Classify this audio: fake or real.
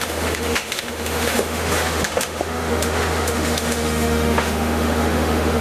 fake